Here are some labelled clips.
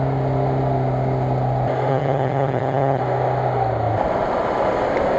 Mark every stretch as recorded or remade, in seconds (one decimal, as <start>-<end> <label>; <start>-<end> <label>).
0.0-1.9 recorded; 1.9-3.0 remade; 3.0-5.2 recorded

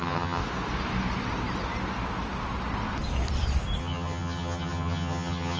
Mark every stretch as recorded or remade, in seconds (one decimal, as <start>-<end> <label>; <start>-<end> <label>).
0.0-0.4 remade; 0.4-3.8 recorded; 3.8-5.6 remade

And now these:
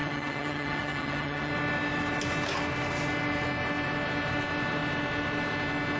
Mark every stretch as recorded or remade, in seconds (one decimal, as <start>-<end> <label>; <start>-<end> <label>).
0.0-1.5 remade; 1.5-6.0 recorded

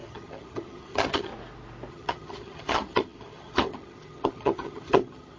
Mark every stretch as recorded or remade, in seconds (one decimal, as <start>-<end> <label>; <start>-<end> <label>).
0.0-1.3 remade; 1.3-1.9 recorded; 1.9-5.4 remade

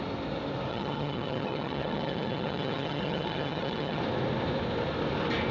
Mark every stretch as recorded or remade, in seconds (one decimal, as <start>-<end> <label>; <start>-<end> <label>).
0.0-0.7 recorded; 0.7-4.0 remade; 4.0-5.5 recorded

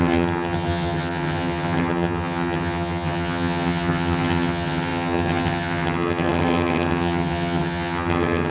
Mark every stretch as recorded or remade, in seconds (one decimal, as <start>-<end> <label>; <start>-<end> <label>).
0.0-8.5 remade

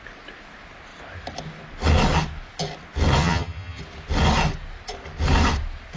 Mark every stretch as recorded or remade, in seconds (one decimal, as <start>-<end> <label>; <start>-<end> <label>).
0.0-3.2 recorded; 3.2-3.8 remade; 3.8-6.0 recorded

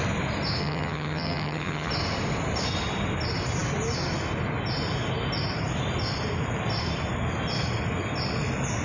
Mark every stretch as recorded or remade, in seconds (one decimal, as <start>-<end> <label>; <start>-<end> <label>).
0.0-0.6 recorded; 0.6-1.9 remade; 1.9-8.8 recorded